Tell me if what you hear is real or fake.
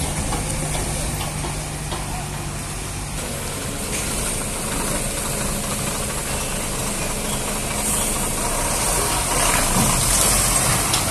real